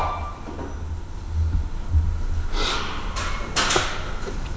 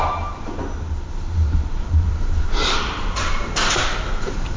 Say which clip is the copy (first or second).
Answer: second